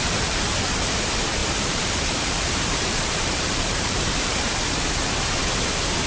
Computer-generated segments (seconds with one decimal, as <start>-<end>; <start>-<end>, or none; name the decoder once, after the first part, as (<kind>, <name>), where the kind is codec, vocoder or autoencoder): 1.4-5.1 (vocoder, BigVGAN v2)